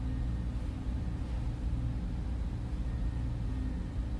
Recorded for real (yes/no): yes